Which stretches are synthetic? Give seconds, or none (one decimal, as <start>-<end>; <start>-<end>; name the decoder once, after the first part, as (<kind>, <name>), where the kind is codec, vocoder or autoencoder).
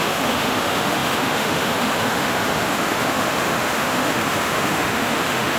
0.0-5.6 (autoencoder, DAC-VAE)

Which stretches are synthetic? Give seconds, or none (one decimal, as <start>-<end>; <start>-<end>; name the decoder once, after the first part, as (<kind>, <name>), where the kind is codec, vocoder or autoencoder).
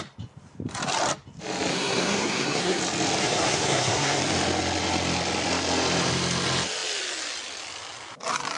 1.7-2.8 (codec, SNAC); 3.2-4.2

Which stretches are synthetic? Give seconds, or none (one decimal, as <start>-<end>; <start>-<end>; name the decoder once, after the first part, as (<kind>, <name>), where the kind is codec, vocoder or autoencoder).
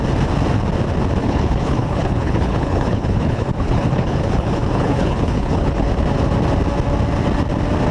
1.2-5.9 (codec, HILCodec)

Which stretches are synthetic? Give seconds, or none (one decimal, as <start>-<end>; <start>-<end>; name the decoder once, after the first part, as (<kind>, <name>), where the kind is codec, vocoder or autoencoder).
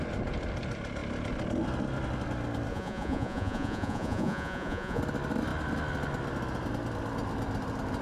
2.7-5.0 (vocoder, Vocos)